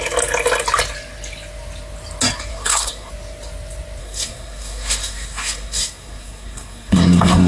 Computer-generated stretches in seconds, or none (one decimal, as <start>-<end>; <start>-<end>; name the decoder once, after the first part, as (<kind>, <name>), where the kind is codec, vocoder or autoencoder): 2.5-3.1 (codec, SNAC); 4.0-7.5